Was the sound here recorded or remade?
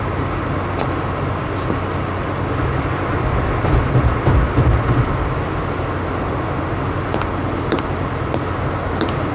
recorded